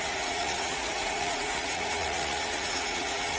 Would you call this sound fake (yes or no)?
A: yes